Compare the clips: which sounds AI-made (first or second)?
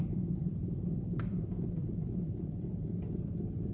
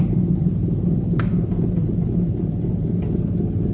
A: first